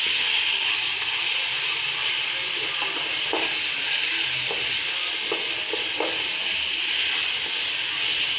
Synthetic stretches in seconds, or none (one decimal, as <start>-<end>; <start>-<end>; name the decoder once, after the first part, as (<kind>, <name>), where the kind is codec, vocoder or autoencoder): none